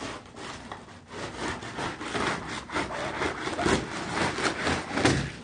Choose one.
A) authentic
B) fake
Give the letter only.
A